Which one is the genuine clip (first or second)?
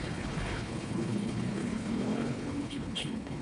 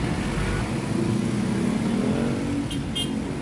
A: second